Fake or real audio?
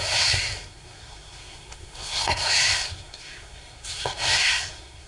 fake